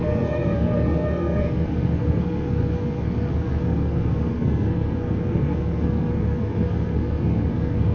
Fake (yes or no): yes